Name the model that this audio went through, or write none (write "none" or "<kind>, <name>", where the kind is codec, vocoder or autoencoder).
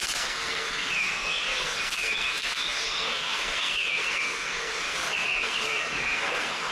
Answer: codec, SNAC